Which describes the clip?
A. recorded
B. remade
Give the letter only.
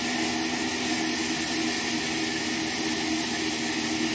A